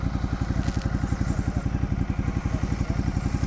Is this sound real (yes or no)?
yes